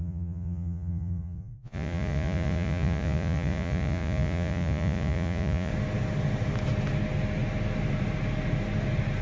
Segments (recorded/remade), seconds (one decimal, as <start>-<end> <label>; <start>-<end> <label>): 0.0-5.7 remade; 5.7-9.2 recorded